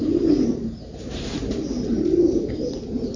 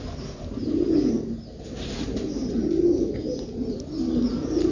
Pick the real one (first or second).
second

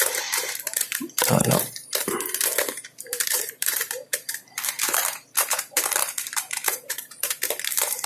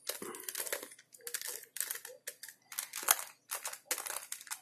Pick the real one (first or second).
second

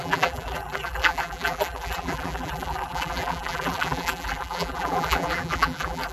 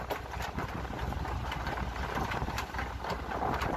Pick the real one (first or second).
second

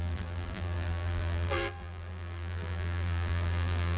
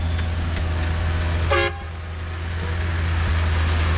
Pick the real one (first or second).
second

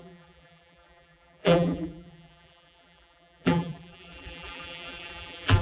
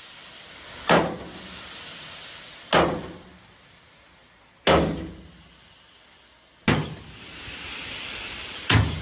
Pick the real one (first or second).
second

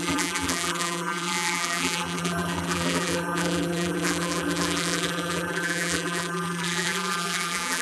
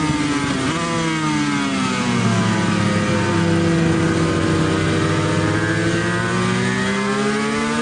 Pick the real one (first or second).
second